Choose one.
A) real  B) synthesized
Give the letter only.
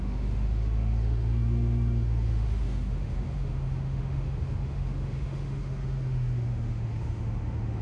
B